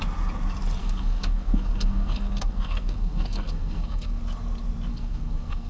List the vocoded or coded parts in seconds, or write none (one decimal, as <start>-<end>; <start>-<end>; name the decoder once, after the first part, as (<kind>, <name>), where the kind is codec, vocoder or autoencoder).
0.8-4.2 (codec, SNAC); 4.9-5.7